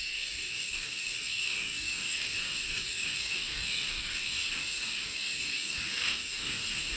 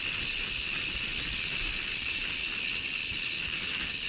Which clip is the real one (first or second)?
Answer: second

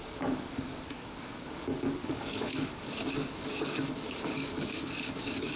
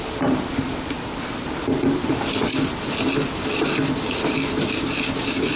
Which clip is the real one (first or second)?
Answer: second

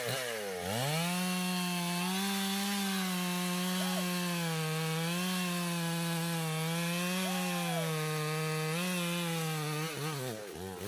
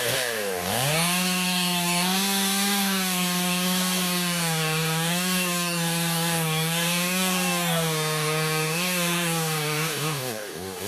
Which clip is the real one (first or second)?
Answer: first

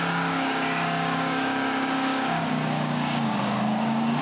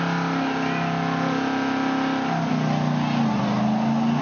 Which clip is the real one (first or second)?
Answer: second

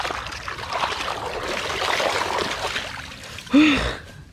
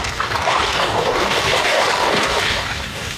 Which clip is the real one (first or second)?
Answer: first